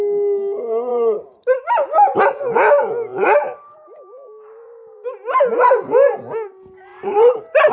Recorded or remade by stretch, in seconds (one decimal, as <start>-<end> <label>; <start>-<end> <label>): 0.0-0.9 recorded; 0.9-2.2 remade; 2.2-3.1 recorded; 3.1-5.4 remade; 5.4-6.9 recorded; 6.9-7.7 remade